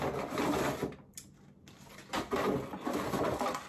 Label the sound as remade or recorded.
recorded